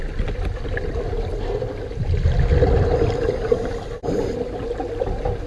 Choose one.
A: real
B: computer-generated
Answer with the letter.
A